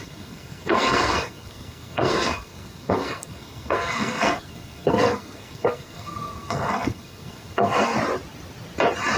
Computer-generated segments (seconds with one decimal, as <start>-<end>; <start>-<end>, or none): 0.0-7.9